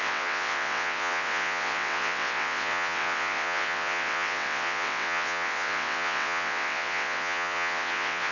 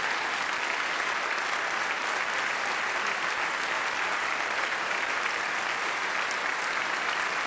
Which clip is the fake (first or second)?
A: first